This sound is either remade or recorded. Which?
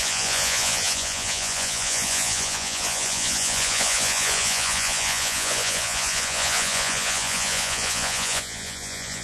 remade